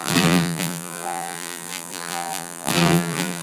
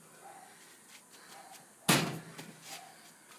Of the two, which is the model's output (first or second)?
first